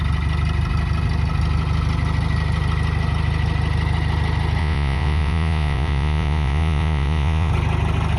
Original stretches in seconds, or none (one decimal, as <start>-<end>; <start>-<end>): 0.0-4.6; 7.5-8.2